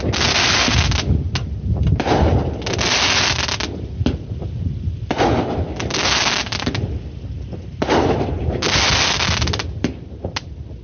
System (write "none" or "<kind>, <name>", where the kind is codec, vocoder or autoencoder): none